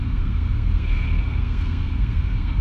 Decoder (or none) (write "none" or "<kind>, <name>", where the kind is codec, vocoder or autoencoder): codec, SNAC